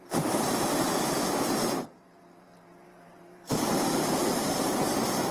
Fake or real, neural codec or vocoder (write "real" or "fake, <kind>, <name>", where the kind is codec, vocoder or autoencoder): fake, vocoder, BigVGAN v2